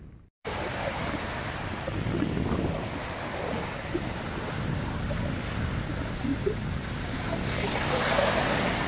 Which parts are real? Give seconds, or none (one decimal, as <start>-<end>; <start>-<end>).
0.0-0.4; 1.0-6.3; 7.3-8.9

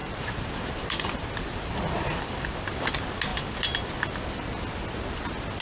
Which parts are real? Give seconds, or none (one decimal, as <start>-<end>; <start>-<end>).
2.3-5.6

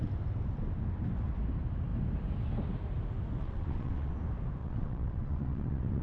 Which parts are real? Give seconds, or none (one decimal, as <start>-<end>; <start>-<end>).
0.0-3.4; 4.1-4.6

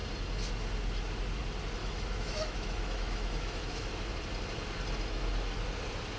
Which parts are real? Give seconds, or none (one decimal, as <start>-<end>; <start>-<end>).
0.0-1.8; 4.1-6.2

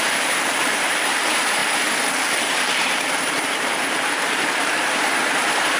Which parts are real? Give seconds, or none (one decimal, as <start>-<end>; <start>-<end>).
1.6-2.4